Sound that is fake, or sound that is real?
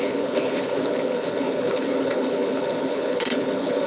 fake